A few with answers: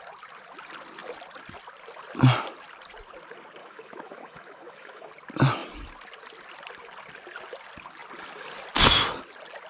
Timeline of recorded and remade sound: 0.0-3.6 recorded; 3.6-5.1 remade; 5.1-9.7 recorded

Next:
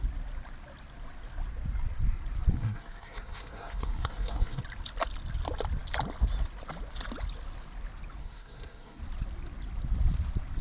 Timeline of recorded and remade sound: 0.0-2.5 recorded; 2.5-4.6 remade; 4.6-8.2 recorded; 8.2-9.0 remade; 9.0-10.6 recorded

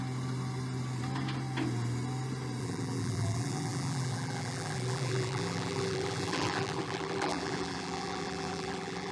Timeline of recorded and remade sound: 0.0-2.6 recorded; 2.6-9.1 remade

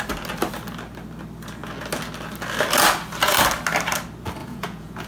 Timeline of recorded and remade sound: 0.0-4.4 recorded; 4.4-5.1 remade

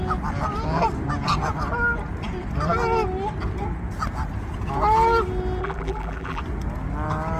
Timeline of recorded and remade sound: 0.0-5.6 recorded; 5.6-6.4 remade; 6.4-7.4 recorded

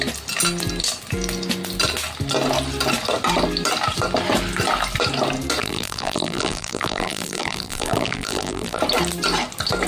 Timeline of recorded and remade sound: 0.0-5.6 recorded; 5.6-8.8 remade; 8.8-9.9 recorded